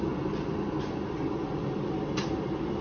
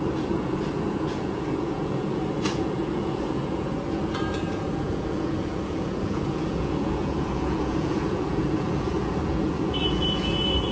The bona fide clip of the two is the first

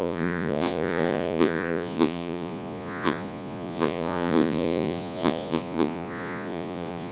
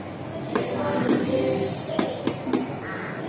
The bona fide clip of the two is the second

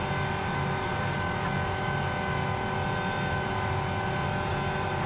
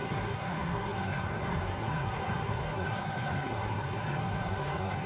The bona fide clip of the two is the first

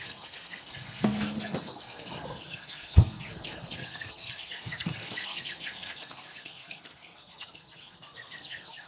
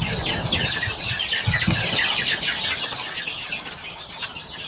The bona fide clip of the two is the second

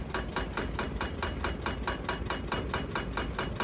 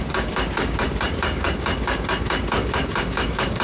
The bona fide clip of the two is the first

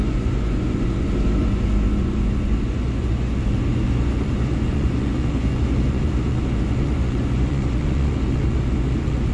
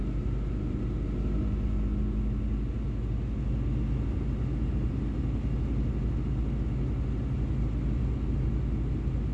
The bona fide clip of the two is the second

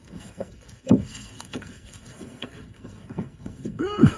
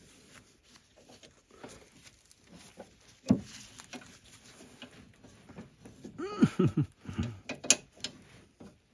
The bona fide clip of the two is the second